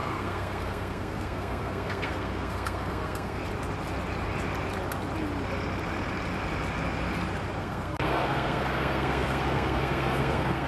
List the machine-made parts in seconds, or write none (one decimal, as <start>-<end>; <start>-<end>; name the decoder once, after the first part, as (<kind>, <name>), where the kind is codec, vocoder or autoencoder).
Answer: 0.0-3.4 (codec, SNAC); 7.6-10.7